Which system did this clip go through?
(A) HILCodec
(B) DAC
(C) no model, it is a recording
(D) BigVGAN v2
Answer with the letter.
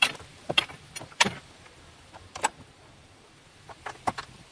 D